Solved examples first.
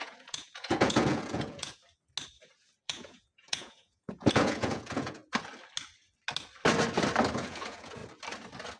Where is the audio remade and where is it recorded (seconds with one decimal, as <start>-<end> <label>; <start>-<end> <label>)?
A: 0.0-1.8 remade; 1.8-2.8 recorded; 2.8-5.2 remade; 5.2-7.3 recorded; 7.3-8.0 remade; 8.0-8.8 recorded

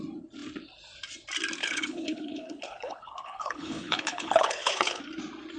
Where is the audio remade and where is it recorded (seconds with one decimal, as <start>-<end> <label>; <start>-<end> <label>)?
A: 0.0-1.6 recorded; 1.6-5.0 remade; 5.0-5.6 recorded

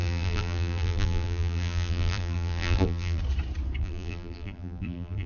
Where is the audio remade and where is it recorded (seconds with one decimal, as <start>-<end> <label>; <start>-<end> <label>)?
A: 0.0-3.2 remade; 3.2-3.8 recorded; 3.8-5.3 remade

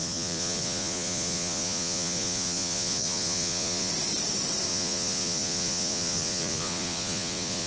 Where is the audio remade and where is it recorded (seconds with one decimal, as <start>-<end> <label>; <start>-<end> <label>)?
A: 0.0-3.9 remade; 3.9-4.7 recorded; 4.7-7.7 remade